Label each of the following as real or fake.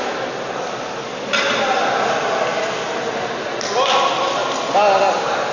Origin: real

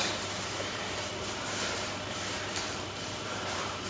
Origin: fake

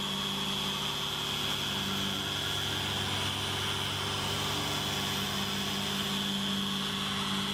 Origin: real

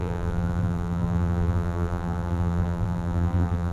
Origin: fake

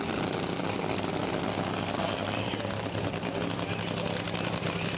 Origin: fake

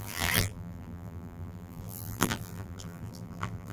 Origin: fake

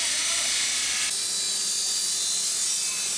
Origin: real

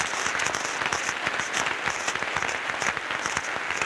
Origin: real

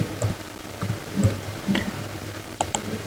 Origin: fake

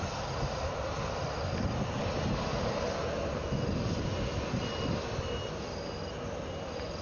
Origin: real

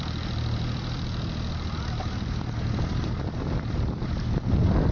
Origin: fake